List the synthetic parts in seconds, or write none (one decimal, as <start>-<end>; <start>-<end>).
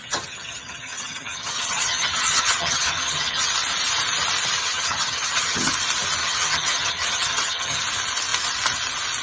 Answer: 0.0-3.5; 4.6-5.7; 6.2-7.8